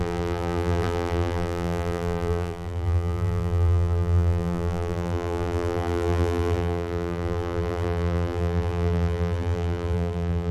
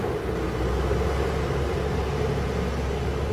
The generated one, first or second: first